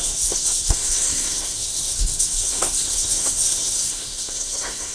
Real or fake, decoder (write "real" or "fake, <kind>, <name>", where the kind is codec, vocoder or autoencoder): fake, codec, SNAC